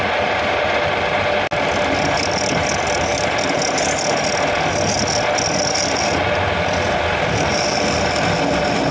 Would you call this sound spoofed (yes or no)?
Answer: no